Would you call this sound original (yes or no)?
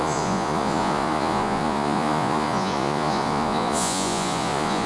no